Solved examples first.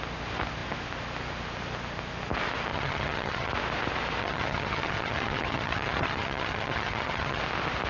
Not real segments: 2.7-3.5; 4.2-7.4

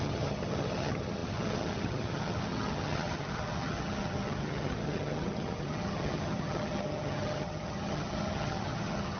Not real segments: 0.0-9.2